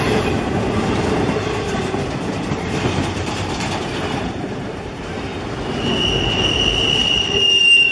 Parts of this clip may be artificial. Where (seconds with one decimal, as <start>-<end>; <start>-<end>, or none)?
0.0-5.3; 6.5-7.9